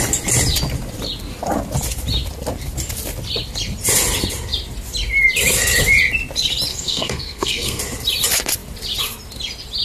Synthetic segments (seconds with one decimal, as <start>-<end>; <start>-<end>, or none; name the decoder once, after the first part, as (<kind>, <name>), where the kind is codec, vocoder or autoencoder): 6.7-7.8 (codec, SNAC)